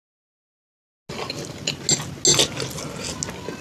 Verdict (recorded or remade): recorded